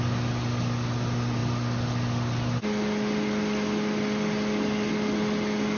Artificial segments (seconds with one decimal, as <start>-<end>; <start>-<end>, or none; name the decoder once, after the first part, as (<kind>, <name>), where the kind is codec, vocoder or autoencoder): none